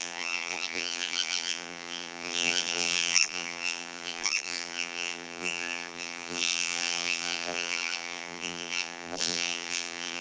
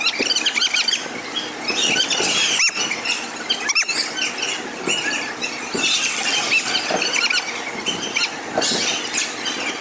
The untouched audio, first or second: second